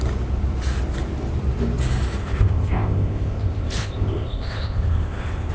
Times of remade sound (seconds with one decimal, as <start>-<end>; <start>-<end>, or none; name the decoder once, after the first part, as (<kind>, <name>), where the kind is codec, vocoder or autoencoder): 2.2-5.5 (codec, ZipCodec)